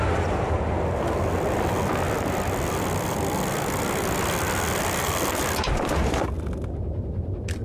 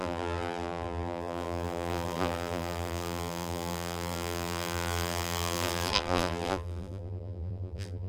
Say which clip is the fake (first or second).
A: second